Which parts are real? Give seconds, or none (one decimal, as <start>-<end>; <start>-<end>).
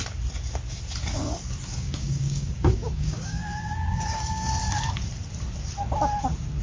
0.0-1.7; 4.5-6.6